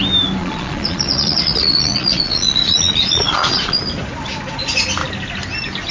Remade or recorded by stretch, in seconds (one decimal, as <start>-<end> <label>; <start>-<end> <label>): 0.0-0.4 recorded; 0.4-3.8 remade; 3.8-5.9 recorded